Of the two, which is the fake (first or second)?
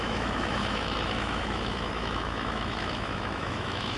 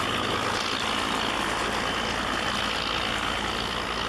first